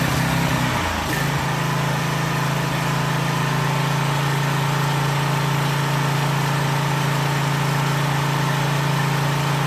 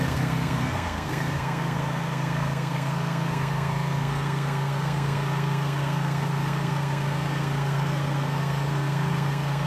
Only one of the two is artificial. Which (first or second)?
second